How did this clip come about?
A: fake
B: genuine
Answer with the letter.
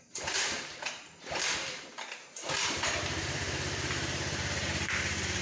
A